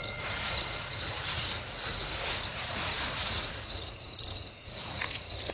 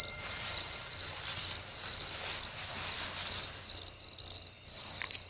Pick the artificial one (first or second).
first